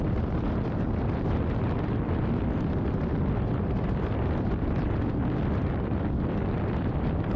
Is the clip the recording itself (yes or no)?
no